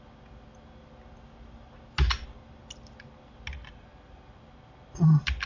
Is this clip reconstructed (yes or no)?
no